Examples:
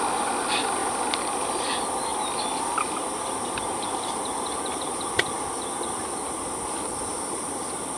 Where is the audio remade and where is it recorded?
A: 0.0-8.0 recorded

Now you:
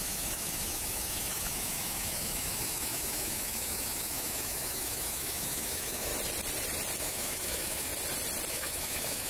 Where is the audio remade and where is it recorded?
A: 0.0-6.1 remade; 6.1-7.0 recorded; 7.0-7.9 remade; 7.9-8.5 recorded; 8.5-9.3 remade

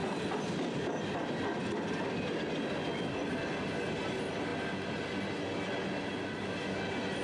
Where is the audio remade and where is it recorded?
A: 0.0-7.2 recorded